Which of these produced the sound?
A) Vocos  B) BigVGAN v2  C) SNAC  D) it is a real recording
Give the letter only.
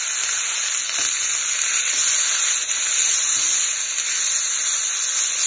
D